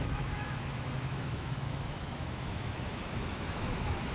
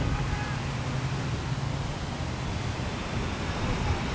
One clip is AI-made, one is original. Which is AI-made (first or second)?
first